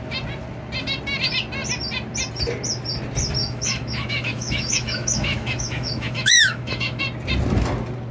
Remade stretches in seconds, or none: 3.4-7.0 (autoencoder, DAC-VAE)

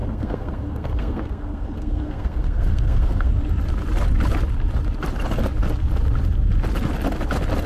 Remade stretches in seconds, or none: 0.0-3.3 (codec, SNAC)

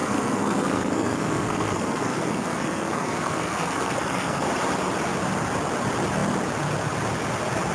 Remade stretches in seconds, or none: 0.0-4.5 (codec, SNAC)

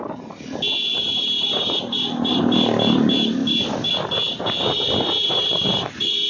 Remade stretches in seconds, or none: 0.9-2.4 (vocoder, BigVGAN v2); 3.4-3.9; 5.2-5.8